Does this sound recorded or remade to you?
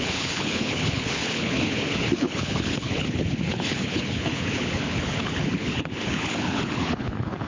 remade